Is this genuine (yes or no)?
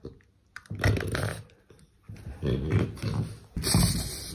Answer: yes